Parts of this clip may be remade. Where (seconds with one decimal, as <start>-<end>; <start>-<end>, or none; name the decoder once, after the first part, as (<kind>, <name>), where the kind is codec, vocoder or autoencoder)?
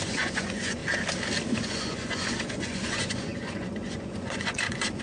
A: 0.0-0.8 (vocoder, Vocos); 1.6-5.0